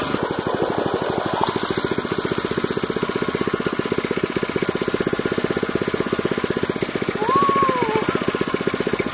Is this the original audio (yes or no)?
yes